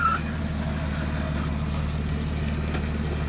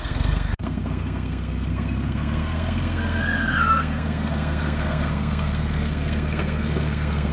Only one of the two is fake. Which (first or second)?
second